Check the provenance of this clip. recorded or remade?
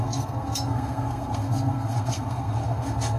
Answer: remade